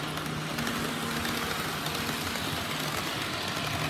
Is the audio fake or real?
real